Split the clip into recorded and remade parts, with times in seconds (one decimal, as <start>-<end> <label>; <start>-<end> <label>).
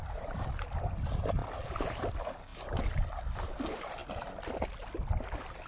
0.0-5.7 recorded